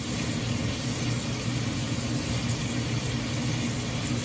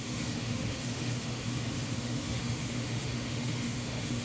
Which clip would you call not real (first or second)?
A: second